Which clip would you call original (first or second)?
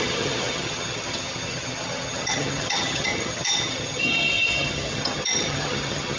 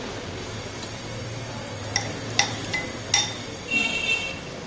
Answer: second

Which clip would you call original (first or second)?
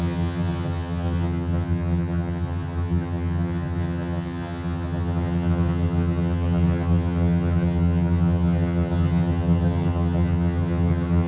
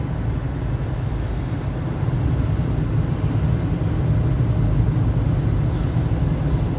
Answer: second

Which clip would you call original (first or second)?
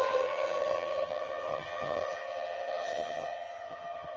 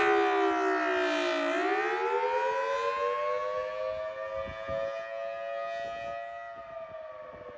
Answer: second